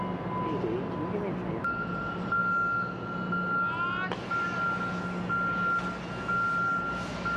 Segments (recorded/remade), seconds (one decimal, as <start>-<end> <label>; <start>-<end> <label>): 0.0-7.4 recorded